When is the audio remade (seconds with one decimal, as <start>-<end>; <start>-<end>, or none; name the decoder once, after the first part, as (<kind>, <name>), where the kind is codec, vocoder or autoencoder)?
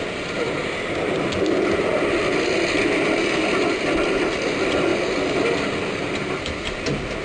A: none